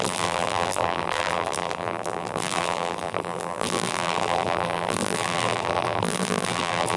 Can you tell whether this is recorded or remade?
remade